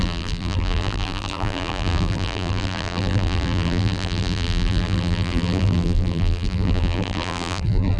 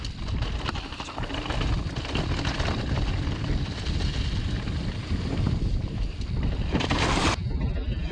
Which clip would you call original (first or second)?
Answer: second